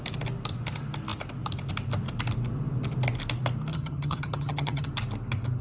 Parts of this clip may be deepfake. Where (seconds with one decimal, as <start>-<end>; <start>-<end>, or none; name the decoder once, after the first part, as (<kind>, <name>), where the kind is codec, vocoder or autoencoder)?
3.7-4.9 (vocoder, HiFi-GAN)